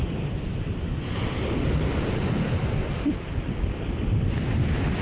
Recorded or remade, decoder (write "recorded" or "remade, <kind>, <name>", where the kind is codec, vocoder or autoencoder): recorded